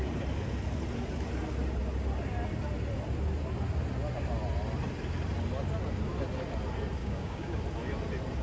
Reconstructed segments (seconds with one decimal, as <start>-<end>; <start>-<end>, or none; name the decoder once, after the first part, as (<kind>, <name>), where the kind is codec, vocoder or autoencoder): 7.0-7.6 (codec, DAC)